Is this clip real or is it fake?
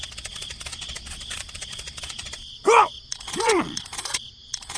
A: fake